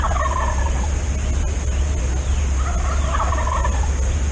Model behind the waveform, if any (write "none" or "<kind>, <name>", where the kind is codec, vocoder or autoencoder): none